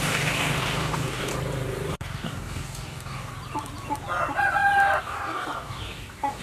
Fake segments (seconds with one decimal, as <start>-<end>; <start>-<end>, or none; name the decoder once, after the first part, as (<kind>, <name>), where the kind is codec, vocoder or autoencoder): 0.0-1.3 (codec, DAC); 1.9-3.3; 5.0-6.4

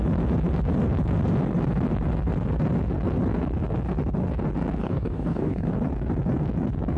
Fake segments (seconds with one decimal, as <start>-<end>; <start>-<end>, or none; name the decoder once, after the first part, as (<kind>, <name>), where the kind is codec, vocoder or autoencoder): 4.8-5.7 (codec, DAC)

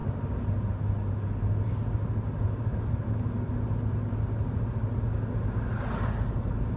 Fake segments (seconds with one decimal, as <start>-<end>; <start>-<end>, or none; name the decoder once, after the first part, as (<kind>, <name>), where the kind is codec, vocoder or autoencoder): none